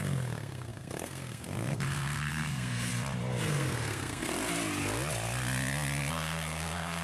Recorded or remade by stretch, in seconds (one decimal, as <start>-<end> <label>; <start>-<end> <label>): 0.0-2.9 remade; 2.9-3.4 recorded; 3.4-4.3 remade; 4.3-6.1 recorded; 6.1-7.0 remade